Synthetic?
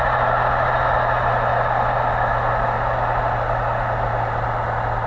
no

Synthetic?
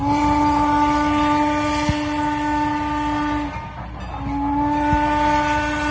no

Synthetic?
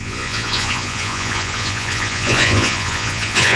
yes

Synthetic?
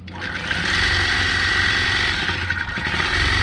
no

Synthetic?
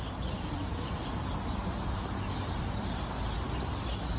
no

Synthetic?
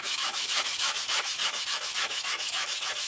yes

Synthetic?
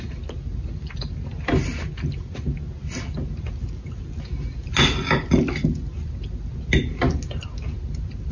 no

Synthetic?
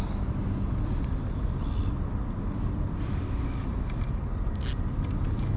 no